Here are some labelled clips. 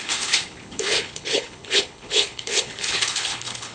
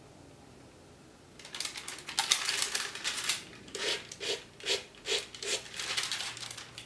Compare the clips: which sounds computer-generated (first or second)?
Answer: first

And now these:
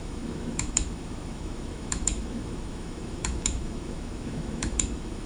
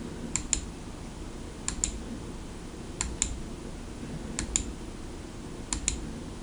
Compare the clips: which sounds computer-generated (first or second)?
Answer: first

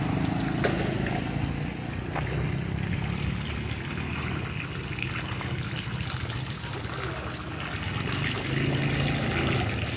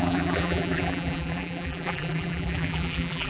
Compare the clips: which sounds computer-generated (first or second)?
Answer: second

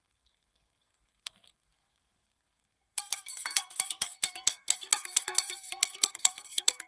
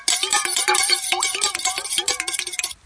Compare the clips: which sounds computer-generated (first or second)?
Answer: first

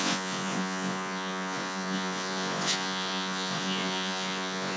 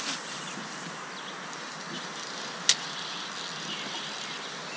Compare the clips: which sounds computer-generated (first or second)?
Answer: first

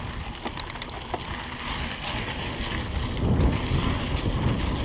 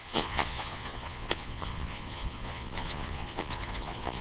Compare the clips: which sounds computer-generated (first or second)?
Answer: second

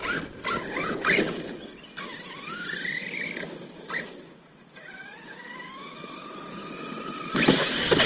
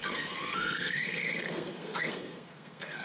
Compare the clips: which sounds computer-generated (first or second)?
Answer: second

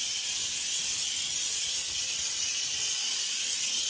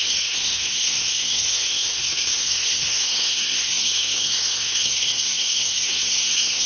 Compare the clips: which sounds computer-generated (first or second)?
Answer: second